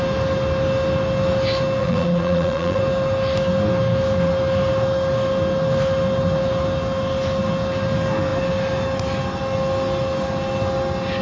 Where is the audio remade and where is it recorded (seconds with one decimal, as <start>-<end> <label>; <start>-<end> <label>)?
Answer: 0.0-1.8 recorded; 1.8-2.8 remade; 2.8-11.2 recorded